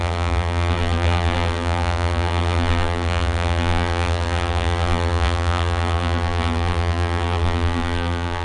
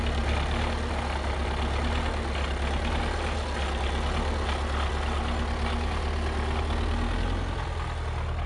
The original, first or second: second